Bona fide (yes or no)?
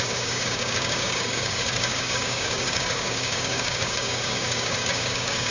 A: no